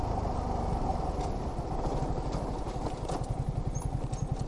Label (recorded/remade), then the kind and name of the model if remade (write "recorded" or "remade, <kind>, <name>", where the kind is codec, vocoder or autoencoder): recorded